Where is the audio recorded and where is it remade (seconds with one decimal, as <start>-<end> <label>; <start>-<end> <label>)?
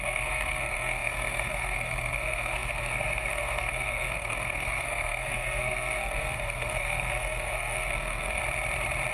0.0-8.4 remade; 8.4-9.1 recorded